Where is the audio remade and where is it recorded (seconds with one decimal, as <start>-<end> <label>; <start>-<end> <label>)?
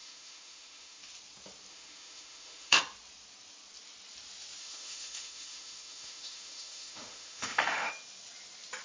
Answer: 0.0-1.0 remade; 1.0-1.7 recorded; 1.7-2.8 remade; 2.8-4.6 recorded; 4.6-7.9 remade; 7.9-8.8 recorded